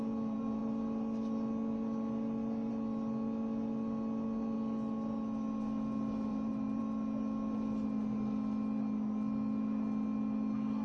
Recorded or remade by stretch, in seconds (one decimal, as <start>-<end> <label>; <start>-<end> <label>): 0.0-6.3 recorded; 6.3-6.8 remade; 6.8-10.8 recorded

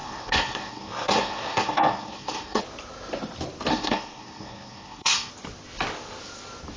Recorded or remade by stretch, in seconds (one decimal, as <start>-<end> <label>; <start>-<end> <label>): 0.0-2.6 remade; 2.6-3.7 recorded; 3.7-5.3 remade; 5.3-6.8 recorded

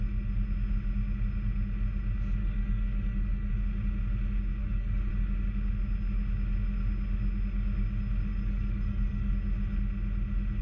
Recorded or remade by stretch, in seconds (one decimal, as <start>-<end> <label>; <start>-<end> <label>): 0.0-2.4 recorded; 2.4-3.5 remade; 3.5-4.6 recorded; 4.6-5.1 remade; 5.1-8.3 recorded; 8.3-9.3 remade; 9.3-10.6 recorded

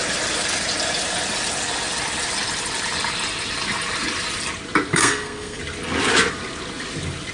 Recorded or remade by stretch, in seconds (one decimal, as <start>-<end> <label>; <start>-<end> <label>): 0.0-4.9 recorded; 4.9-5.6 remade; 5.6-7.3 recorded

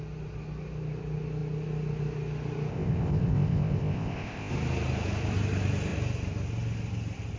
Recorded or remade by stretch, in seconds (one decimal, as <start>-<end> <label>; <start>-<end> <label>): 0.0-2.7 recorded; 2.7-4.5 remade; 4.5-7.4 recorded

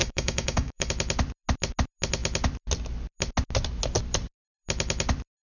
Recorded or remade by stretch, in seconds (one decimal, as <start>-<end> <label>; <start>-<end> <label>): 0.0-0.9 remade; 0.9-5.5 recorded